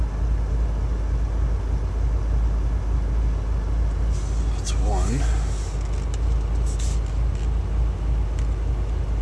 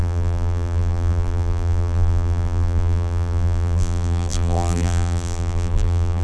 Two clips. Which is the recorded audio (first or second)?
first